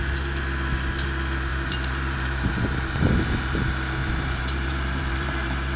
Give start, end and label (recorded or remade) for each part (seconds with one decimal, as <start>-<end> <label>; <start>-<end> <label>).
0.0-1.5 recorded; 1.5-2.5 remade; 2.5-4.0 recorded; 4.0-5.8 remade

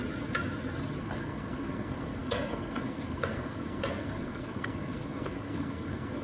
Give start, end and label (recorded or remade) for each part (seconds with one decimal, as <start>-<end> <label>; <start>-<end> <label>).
0.0-1.0 recorded; 1.0-6.2 remade

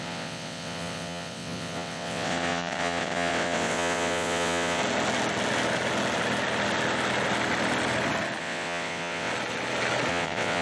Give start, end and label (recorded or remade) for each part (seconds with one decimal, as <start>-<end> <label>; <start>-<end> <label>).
0.0-4.8 remade; 4.8-8.4 recorded; 8.4-9.3 remade; 9.3-10.1 recorded; 10.1-10.6 remade

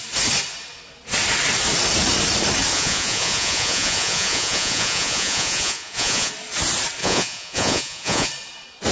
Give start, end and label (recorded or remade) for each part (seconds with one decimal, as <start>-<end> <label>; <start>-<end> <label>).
0.0-2.7 recorded; 2.7-6.3 remade; 6.3-7.0 recorded; 7.0-8.3 remade; 8.3-8.9 recorded